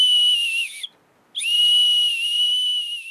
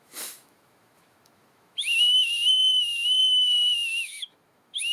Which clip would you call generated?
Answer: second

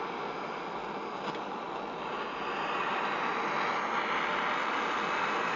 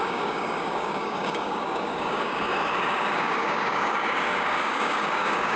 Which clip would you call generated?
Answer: second